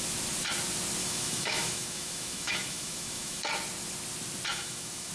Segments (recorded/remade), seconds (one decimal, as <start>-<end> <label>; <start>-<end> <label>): 0.0-1.0 recorded; 1.0-3.4 remade; 3.4-4.5 recorded; 4.5-5.1 remade

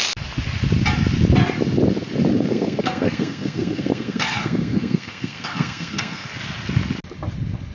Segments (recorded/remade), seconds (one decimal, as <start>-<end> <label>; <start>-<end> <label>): 0.0-2.3 recorded; 2.3-6.3 remade; 6.3-7.7 recorded

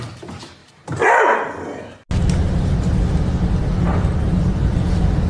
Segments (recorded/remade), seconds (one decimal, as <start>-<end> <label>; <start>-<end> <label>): 0.0-5.3 recorded

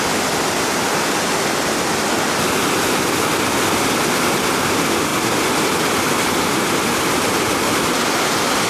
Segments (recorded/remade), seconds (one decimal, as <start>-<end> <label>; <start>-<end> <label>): 0.0-8.7 recorded

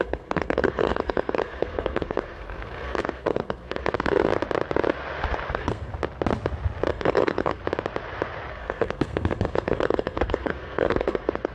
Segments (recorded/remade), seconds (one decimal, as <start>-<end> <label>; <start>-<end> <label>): 0.0-4.3 remade; 4.3-5.5 recorded; 5.5-5.9 remade; 5.9-6.9 recorded; 6.9-7.6 remade; 7.6-8.5 recorded; 8.5-11.5 remade

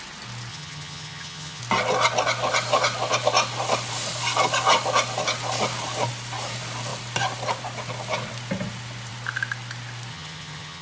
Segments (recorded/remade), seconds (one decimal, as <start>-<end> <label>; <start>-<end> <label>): 0.0-0.5 recorded; 0.5-1.6 remade; 1.6-10.1 recorded; 10.1-10.8 remade

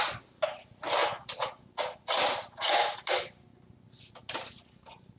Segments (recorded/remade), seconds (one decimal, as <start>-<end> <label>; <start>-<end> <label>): 0.0-5.2 recorded

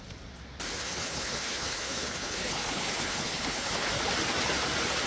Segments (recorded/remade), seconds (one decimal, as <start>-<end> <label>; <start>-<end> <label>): 0.0-0.8 recorded; 0.8-3.9 remade; 3.9-5.1 recorded